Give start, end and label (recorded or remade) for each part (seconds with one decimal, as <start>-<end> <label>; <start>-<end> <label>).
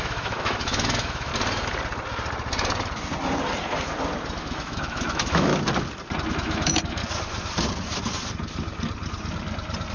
0.0-1.3 remade; 1.3-4.4 recorded; 4.4-5.5 remade; 5.5-6.3 recorded; 6.3-7.0 remade; 7.0-9.9 recorded